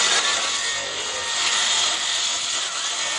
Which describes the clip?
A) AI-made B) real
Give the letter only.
B